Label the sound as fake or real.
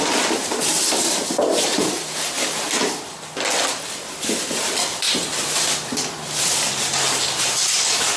fake